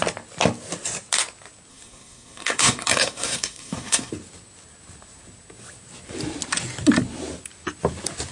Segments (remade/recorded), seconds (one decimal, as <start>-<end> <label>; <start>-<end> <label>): 0.0-1.7 recorded; 1.7-4.1 remade; 4.1-8.3 recorded